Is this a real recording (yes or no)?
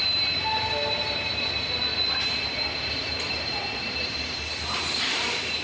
no